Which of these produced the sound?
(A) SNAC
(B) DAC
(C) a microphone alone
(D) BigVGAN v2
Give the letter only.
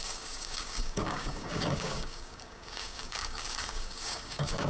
B